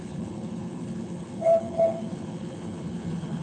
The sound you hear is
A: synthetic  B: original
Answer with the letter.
A